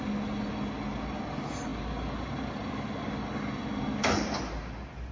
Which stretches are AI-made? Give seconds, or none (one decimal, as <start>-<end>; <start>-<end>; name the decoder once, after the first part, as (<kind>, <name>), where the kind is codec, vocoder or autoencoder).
none

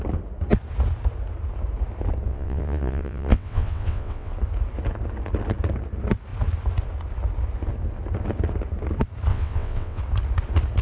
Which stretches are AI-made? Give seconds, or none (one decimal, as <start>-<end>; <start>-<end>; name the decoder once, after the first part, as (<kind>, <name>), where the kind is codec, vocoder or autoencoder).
2.3-4.3 (vocoder, WaveNeXt); 9.3-10.0

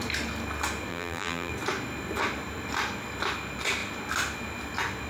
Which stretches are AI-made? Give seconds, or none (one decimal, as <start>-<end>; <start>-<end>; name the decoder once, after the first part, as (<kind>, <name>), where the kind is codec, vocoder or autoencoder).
0.9-1.5 (vocoder, BigVGAN v2)

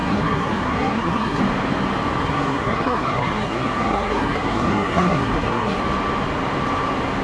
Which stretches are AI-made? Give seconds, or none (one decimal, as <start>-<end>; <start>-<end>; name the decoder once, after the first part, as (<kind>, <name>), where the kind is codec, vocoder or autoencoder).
0.0-1.4 (codec, SNAC); 2.2-5.8

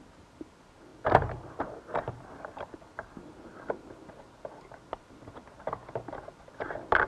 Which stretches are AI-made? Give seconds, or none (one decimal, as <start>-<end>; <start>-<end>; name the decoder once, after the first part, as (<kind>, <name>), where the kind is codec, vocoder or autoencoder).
0.9-4.2 (vocoder, BigVGAN v2)

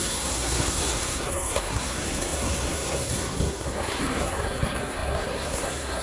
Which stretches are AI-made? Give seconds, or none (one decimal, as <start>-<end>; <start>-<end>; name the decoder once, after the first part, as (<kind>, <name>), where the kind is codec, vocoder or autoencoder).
0.0-6.0 (codec, SNAC)